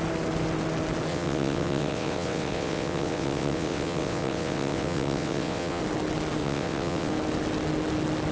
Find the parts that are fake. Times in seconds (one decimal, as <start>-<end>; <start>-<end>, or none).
1.1-5.8; 6.4-7.1